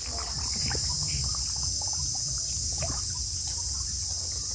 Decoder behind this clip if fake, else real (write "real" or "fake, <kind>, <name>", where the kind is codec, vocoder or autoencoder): real